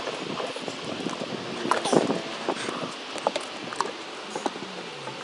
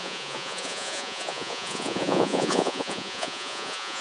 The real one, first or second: first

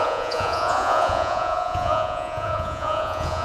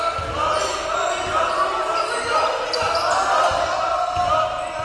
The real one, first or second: second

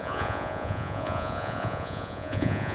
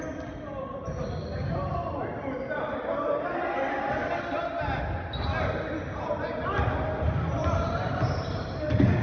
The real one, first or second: second